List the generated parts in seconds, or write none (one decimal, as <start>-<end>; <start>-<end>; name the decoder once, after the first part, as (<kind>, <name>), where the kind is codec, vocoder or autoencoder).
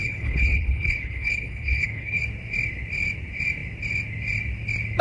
0.0-2.2 (codec, HILCodec)